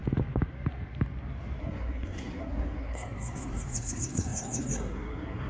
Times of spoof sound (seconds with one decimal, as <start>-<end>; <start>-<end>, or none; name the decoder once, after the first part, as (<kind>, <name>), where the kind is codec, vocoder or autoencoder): 1.6-5.5 (codec, SNAC)